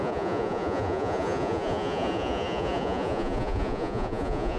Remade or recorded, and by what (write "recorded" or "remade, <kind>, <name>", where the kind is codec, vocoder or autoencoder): remade, vocoder, Vocos